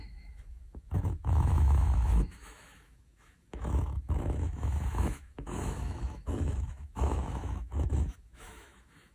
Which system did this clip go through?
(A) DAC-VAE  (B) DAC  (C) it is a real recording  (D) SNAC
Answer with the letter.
A